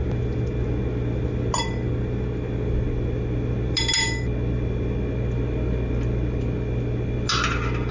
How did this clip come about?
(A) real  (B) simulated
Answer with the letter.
A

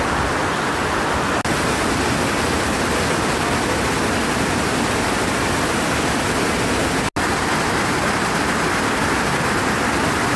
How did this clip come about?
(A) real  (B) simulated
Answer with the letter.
A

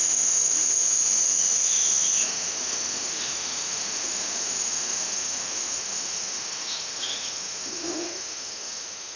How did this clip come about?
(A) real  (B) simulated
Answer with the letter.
B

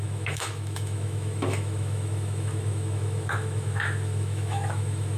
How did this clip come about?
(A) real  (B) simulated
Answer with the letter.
B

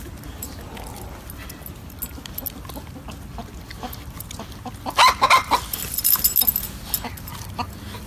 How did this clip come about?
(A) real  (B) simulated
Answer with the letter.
A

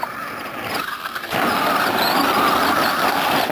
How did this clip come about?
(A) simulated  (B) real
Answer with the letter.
B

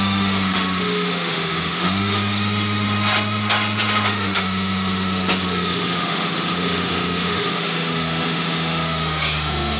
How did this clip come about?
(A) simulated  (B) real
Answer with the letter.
A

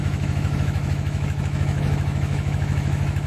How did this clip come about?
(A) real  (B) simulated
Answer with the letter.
B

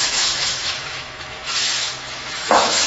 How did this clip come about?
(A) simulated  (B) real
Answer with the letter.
A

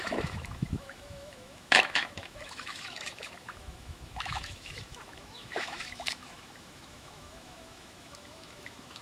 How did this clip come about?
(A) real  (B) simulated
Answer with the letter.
B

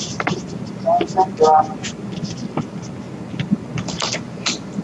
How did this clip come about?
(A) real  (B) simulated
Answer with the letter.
A